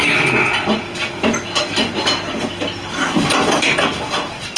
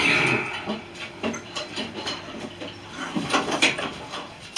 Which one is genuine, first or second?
first